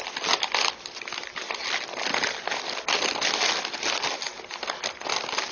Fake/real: real